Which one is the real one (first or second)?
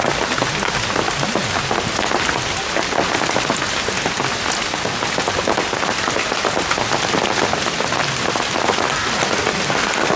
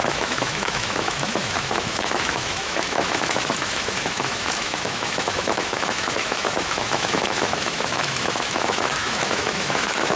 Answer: first